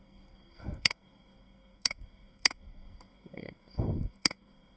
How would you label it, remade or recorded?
remade